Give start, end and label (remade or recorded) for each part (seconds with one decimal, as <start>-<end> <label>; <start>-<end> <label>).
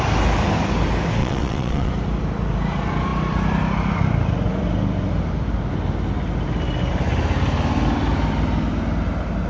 0.0-1.2 recorded; 1.2-1.9 remade; 1.9-9.5 recorded